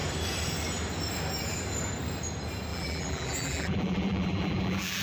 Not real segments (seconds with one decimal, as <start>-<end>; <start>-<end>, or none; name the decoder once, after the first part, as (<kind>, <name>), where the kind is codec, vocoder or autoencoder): 2.7-5.0 (vocoder, BigVGAN v2)